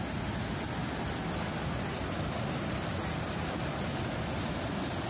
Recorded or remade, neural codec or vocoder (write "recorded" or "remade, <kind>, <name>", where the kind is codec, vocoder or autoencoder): recorded